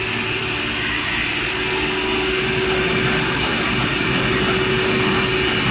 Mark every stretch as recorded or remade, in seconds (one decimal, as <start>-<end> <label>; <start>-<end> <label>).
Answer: 0.0-5.7 recorded